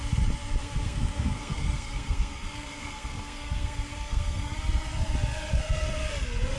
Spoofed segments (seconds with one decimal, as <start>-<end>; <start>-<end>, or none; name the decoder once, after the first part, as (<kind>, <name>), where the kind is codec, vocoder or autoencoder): 0.6-4.6 (codec, SNAC); 5.5-6.1